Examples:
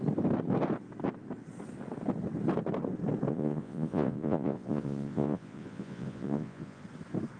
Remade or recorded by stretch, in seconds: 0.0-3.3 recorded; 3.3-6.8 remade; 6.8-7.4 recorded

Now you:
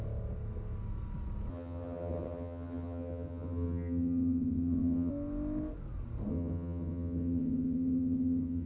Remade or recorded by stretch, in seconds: 0.0-1.5 recorded; 1.5-5.1 remade; 5.1-6.3 recorded; 6.3-8.7 remade

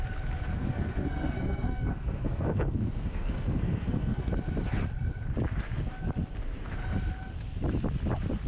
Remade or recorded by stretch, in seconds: 0.0-0.6 recorded; 0.6-4.3 remade; 4.3-8.5 recorded

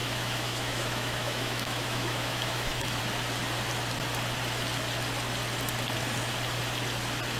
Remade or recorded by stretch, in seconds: 0.0-3.0 remade; 3.0-7.4 recorded